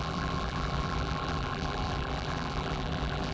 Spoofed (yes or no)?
yes